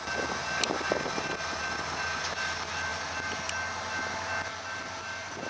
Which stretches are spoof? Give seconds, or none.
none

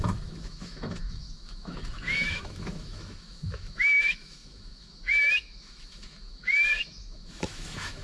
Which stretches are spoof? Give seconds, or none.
0.0-8.0 (autoencoder, DAC-VAE)

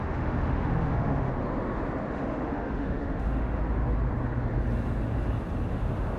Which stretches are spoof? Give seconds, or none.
0.0-1.3 (autoencoder, DAC-VAE); 2.1-3.6; 5.7-6.2

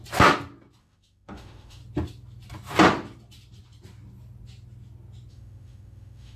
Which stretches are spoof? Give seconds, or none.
0.8-1.8 (autoencoder, DAC-VAE); 5.3-6.4

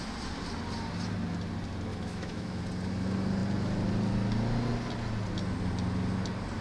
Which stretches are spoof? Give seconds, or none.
1.9-2.6 (autoencoder, DAC-VAE)

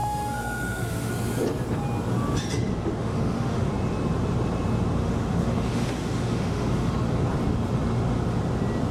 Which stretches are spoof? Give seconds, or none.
0.0-1.1 (autoencoder, DAC-VAE); 3.0-3.7; 5.0-6.9

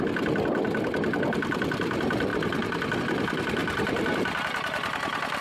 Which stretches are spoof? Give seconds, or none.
none

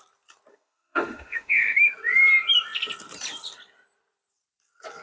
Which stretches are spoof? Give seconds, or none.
0.5-1.9 (autoencoder, DAC-VAE)